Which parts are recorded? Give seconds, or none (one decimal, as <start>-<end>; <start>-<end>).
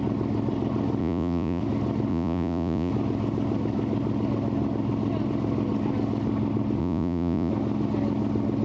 0.0-1.0; 1.6-2.1; 2.9-6.8; 7.5-8.6